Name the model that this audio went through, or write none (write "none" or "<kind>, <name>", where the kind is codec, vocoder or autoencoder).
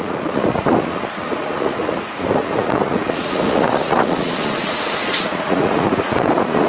vocoder, Vocos